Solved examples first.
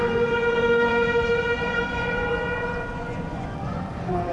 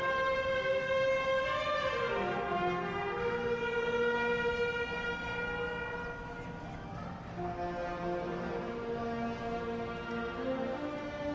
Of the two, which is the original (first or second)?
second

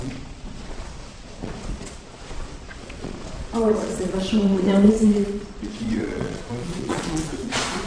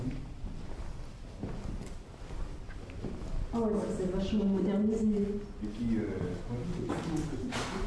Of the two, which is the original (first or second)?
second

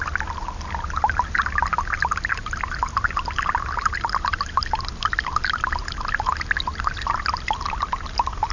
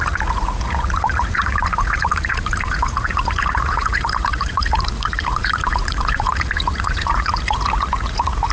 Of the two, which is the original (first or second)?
first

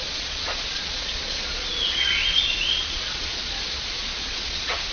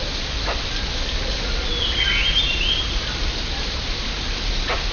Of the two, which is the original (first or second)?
second